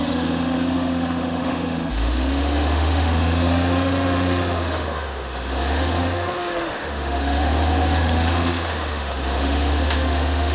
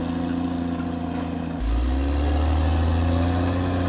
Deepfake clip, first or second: first